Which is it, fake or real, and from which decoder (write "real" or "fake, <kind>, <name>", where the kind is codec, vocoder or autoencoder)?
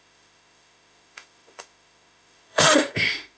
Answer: fake, autoencoder, DAC-VAE